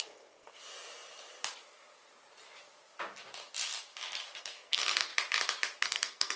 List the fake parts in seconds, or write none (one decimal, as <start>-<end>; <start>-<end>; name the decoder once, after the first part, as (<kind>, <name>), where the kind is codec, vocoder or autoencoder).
0.0-0.6 (codec, SNAC); 4.4-5.1; 5.8-6.4